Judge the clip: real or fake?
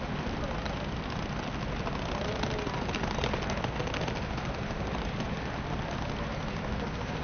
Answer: real